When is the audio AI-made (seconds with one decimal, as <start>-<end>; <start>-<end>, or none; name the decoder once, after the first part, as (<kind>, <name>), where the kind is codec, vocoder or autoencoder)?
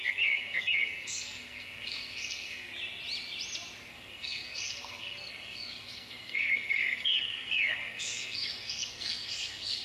0.0-2.7 (codec, SNAC); 3.9-9.8